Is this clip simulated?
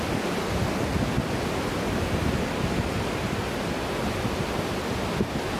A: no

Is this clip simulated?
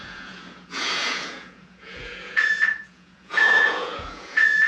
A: yes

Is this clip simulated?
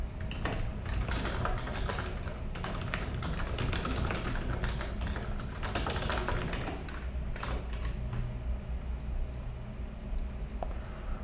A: no